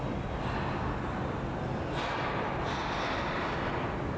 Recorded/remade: recorded